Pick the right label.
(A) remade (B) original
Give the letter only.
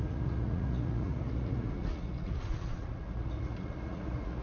A